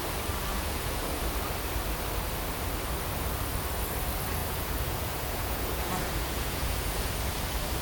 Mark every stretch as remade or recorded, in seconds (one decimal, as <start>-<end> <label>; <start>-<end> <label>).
0.0-0.5 recorded; 0.5-1.2 remade; 1.2-4.4 recorded; 4.4-7.1 remade; 7.1-7.8 recorded